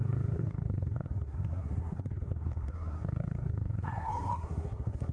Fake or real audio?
fake